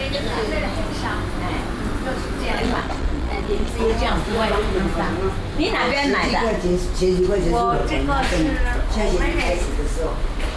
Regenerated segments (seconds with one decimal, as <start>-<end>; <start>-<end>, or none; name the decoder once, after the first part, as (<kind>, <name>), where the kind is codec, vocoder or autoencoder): 2.5-3.7 (vocoder, Vocos)